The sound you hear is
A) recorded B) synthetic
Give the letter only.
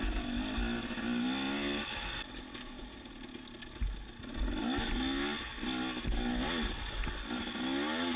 A